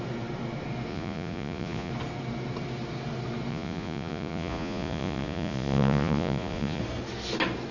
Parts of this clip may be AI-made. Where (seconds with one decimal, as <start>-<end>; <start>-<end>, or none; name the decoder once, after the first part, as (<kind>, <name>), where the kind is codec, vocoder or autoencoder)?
0.9-1.9 (vocoder, Vocos); 3.5-6.8